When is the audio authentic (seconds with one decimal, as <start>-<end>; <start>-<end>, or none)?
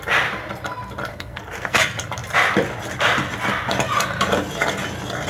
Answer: 0.0-1.1; 1.8-5.3